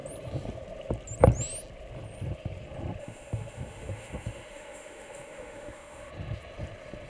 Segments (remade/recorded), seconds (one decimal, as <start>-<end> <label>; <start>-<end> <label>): 0.0-3.0 recorded; 3.0-6.1 remade; 6.1-7.1 recorded